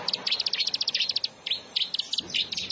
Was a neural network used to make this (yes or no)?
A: no